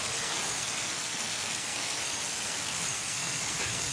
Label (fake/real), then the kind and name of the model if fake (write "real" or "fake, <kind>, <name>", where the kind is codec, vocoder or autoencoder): fake, codec, SNAC